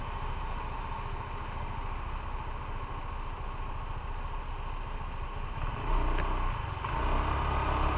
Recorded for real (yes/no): yes